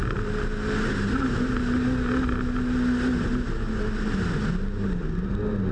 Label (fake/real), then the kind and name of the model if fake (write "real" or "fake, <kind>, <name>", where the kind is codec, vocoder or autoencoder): real